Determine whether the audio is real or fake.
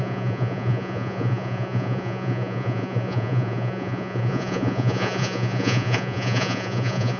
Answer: fake